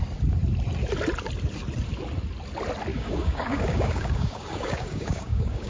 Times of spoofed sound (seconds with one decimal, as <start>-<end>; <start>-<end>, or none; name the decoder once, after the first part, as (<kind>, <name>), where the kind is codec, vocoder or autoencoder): 2.9-5.7 (codec, DAC)